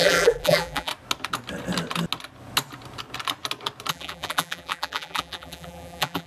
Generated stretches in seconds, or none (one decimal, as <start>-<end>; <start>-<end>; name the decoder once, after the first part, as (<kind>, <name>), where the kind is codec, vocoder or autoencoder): 0.0-0.9 (vocoder, BigVGAN v2); 3.9-6.3